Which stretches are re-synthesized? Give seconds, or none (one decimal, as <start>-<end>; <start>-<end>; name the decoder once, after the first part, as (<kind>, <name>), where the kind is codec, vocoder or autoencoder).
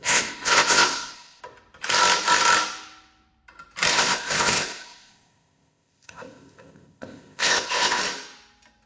0.0-1.4 (codec, ZipCodec); 3.9-8.0